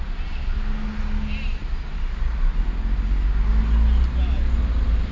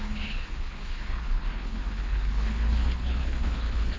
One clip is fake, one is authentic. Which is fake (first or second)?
second